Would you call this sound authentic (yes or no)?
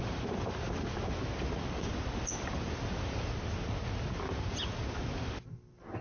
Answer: yes